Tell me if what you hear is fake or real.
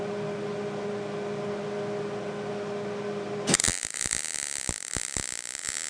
real